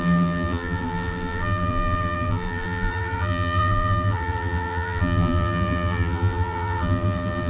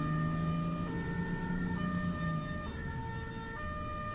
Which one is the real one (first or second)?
second